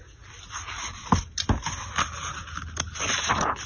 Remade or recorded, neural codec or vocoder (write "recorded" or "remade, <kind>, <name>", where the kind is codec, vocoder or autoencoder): recorded